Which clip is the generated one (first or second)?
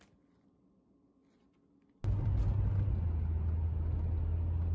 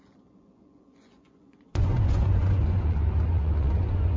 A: second